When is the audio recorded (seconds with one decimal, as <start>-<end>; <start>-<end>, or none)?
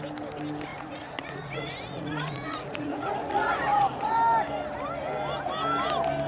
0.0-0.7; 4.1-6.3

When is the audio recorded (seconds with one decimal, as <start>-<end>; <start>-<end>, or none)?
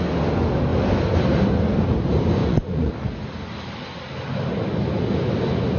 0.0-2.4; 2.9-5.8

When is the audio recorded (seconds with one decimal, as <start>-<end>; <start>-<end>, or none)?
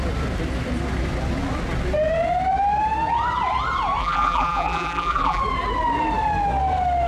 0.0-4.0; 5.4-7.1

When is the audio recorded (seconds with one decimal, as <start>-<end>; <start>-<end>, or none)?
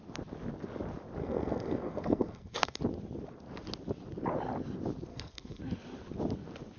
0.0-1.2; 2.8-5.1; 5.6-6.8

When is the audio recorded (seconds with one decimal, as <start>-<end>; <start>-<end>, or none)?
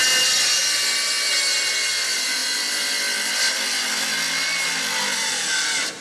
0.0-6.0